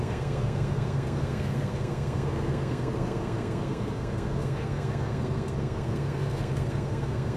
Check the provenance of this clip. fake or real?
fake